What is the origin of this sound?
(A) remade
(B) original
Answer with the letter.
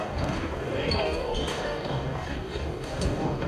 A